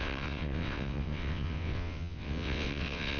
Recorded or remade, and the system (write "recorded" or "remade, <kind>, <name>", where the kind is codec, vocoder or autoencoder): remade, vocoder, WaveNeXt